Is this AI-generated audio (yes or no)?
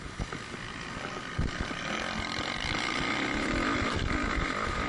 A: no